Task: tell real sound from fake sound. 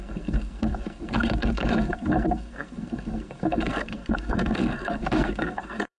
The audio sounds fake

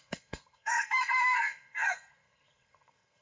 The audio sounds fake